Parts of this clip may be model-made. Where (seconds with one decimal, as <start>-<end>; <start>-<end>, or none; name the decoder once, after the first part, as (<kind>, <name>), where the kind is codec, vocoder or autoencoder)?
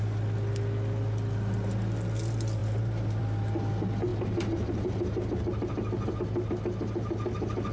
none